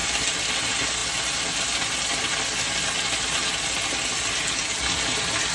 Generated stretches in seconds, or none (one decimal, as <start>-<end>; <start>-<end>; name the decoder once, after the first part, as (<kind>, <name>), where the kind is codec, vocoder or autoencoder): none